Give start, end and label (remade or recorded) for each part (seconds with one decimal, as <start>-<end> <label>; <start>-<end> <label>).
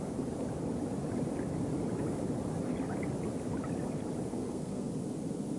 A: 0.0-4.3 recorded; 4.3-4.9 remade; 4.9-5.6 recorded